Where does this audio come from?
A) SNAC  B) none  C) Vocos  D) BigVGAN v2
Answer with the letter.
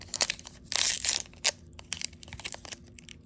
D